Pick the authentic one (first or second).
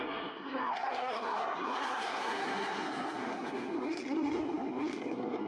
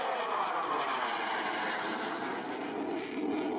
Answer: second